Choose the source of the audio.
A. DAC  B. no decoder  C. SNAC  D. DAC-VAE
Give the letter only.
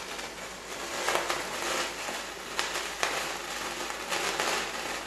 B